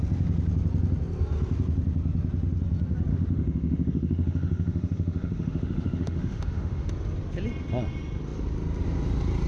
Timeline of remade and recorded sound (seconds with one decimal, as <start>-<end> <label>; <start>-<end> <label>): 0.0-3.1 recorded; 3.1-6.9 remade; 6.9-9.5 recorded